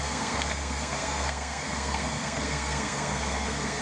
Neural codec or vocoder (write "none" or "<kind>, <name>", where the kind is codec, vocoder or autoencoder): codec, SNAC